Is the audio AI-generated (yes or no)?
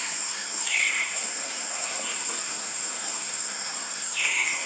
yes